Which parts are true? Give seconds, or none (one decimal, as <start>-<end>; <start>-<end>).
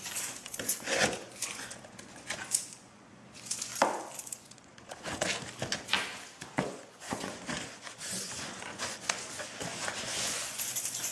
3.7-4.2; 5.3-6.4